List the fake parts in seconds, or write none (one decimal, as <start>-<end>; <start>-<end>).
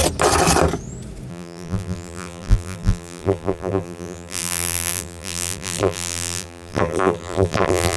1.3-8.0